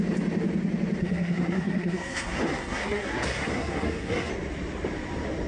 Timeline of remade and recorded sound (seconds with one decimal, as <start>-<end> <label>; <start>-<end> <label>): 0.0-1.0 recorded; 1.0-4.3 remade; 4.3-5.5 recorded